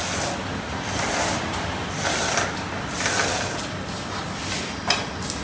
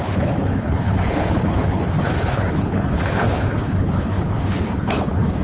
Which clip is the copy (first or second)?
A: second